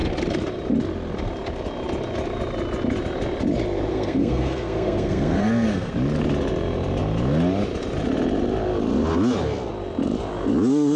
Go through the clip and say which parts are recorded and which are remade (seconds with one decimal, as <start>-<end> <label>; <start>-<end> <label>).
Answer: 0.0-3.9 recorded; 3.9-5.9 remade; 5.9-11.0 recorded